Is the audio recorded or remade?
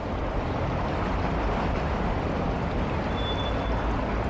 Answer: remade